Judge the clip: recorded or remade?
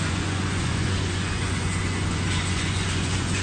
remade